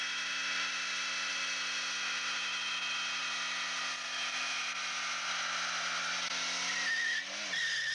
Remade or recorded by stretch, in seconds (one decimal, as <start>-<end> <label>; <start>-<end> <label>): 0.0-7.9 recorded